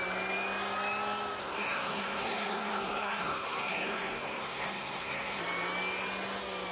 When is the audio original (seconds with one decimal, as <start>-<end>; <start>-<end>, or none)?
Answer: 0.0-1.4; 5.4-6.7